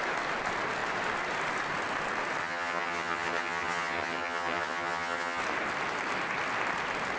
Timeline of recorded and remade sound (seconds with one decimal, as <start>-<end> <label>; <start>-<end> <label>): 0.0-2.4 recorded; 2.4-5.4 remade; 5.4-7.2 recorded